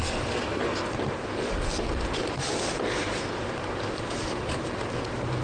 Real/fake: real